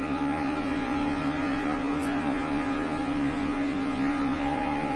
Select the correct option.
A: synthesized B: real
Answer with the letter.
A